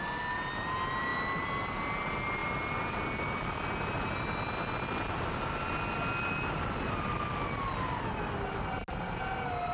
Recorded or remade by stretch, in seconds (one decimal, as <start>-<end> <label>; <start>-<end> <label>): 0.0-9.7 recorded